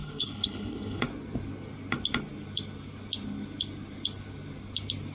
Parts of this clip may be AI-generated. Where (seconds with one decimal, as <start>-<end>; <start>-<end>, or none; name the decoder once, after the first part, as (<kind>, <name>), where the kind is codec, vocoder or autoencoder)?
0.0-1.0 (codec, HILCodec)